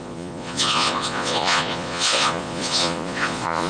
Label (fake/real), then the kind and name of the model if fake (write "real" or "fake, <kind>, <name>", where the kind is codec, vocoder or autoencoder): fake, vocoder, Vocos